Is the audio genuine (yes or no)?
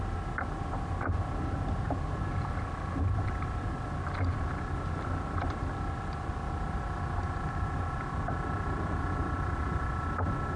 yes